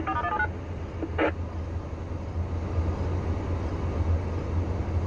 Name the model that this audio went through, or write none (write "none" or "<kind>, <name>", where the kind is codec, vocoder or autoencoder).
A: none